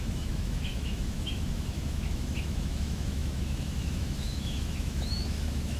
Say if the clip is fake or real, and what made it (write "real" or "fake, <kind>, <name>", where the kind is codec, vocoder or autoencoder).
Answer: fake, autoencoder, DAC-VAE